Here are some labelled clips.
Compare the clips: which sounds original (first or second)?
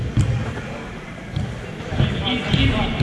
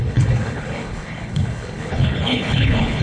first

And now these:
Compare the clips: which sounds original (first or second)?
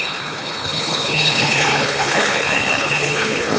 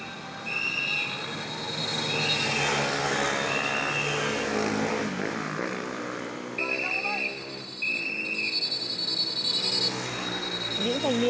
second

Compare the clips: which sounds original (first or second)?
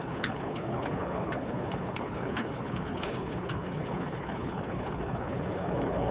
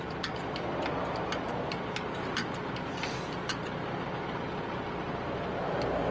second